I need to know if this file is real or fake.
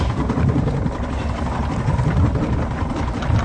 real